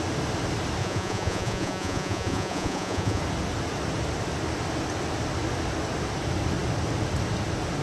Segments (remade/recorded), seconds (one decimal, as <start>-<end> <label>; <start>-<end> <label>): 0.0-0.8 recorded; 0.8-3.2 remade; 3.2-7.8 recorded